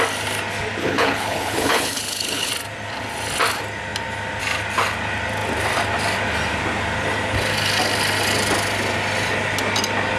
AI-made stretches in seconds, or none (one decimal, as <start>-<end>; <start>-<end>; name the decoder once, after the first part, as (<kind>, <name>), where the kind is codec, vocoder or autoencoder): 0.8-2.5 (codec, HILCodec)